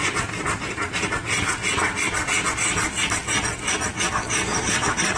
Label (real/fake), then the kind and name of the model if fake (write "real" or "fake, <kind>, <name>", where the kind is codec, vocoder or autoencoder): real